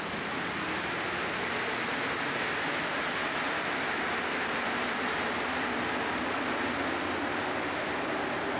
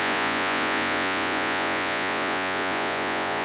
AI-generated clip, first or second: second